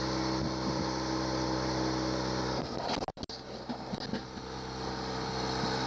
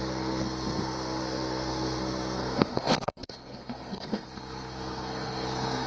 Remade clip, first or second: second